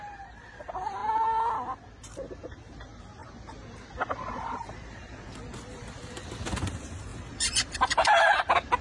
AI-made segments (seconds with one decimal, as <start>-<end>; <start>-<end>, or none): 0.0-1.0; 2.3-3.2; 4.3-8.8